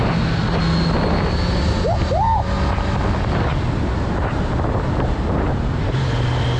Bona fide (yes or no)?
yes